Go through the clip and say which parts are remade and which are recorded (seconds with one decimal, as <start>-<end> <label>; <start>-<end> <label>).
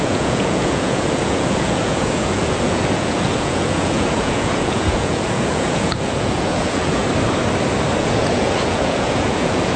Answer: 0.0-7.0 remade; 7.0-8.0 recorded; 8.0-9.8 remade